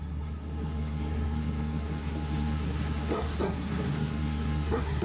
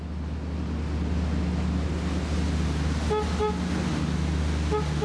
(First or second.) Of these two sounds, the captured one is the second